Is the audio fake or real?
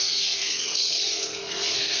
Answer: fake